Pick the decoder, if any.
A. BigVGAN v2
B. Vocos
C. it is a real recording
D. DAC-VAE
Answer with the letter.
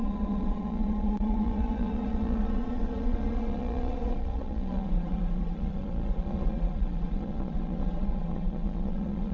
B